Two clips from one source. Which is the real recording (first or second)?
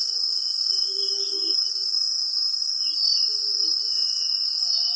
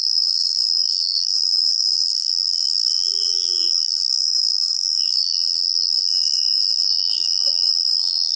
first